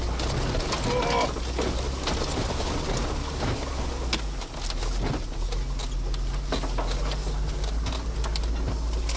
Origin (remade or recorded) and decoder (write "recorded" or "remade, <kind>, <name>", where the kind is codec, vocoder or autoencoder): recorded